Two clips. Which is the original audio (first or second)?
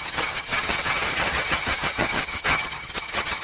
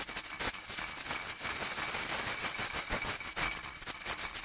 second